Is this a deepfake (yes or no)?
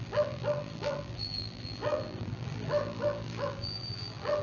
yes